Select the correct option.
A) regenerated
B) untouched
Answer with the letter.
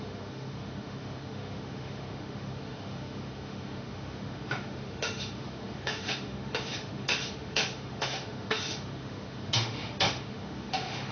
A